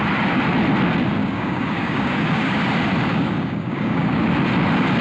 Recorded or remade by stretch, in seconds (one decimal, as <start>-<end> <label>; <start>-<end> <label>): 0.0-1.2 recorded; 1.2-2.6 remade; 2.6-3.1 recorded; 3.1-4.2 remade; 4.2-5.0 recorded